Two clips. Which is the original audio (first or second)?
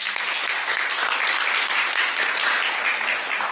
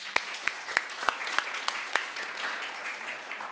first